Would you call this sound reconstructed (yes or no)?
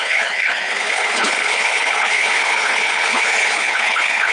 yes